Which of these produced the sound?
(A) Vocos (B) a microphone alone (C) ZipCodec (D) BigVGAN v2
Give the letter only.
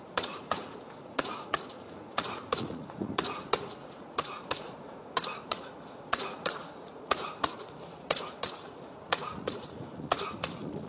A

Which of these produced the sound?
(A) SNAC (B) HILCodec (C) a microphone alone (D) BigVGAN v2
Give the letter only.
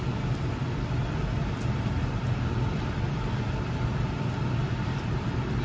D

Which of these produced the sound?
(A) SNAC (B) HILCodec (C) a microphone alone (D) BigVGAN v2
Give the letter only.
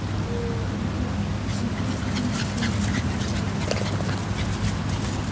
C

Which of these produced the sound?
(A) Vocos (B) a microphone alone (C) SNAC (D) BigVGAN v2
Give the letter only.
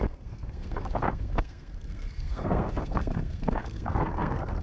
C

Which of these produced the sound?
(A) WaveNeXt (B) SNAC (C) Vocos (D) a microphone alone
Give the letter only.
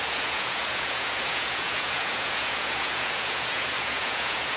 C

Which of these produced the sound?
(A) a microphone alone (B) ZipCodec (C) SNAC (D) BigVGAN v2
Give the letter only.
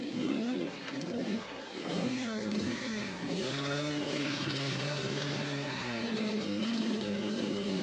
C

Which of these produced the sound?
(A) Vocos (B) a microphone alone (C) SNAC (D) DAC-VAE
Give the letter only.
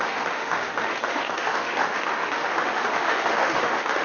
D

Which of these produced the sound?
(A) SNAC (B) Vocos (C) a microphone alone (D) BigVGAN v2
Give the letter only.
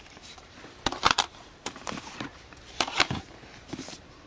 D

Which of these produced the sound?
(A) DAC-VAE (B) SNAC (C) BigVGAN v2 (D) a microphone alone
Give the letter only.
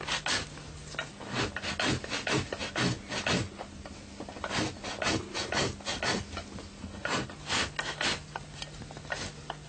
D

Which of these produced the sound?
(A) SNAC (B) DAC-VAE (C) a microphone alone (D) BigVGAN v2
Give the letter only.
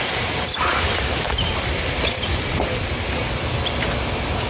C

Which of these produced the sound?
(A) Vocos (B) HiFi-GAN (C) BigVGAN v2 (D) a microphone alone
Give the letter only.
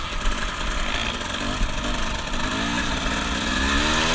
D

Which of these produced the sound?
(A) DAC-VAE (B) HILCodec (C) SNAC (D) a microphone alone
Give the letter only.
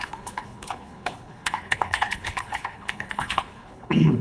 B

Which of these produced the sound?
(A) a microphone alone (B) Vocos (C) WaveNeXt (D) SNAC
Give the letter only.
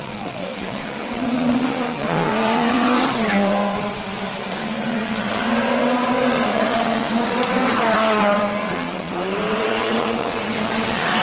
C